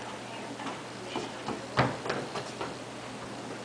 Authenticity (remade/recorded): recorded